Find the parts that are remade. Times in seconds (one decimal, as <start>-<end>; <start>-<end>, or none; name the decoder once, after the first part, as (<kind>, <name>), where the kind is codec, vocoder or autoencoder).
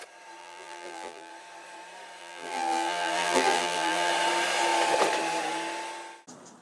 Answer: 0.4-1.3 (vocoder, BigVGAN v2); 2.2-4.1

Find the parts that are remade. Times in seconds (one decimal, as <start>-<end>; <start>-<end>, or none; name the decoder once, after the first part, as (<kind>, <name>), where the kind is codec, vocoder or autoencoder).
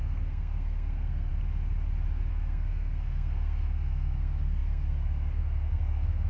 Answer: 0.0-1.3 (codec, SNAC); 2.3-6.3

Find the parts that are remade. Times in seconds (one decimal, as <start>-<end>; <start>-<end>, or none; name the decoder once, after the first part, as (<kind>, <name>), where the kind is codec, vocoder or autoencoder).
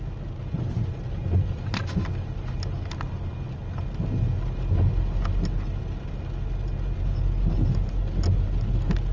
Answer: none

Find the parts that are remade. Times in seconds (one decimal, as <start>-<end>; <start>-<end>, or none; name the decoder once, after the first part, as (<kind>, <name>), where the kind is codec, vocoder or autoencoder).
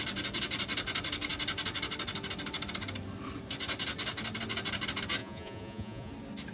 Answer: 5.2-6.1 (vocoder, Vocos)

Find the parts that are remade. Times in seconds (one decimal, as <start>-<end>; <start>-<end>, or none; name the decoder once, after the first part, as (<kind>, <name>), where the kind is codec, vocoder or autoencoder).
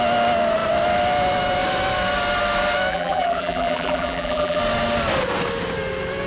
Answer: 2.9-4.6 (vocoder, BigVGAN v2)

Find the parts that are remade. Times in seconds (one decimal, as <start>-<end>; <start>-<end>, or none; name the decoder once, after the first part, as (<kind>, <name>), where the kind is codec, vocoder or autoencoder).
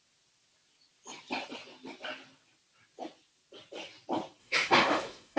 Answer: 4.4-5.4 (autoencoder, DAC-VAE)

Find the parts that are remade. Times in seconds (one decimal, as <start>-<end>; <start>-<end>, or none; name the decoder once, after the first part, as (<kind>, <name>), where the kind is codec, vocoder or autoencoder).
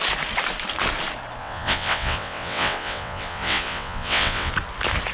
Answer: 1.4-4.5 (vocoder, WaveNeXt)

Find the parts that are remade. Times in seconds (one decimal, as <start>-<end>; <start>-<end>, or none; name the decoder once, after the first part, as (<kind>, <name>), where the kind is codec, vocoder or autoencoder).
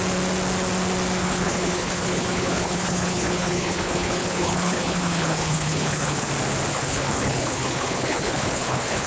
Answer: 1.2-6.3 (codec, HILCodec); 6.7-9.1